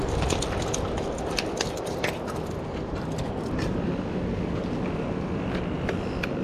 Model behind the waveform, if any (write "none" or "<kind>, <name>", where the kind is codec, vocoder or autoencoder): none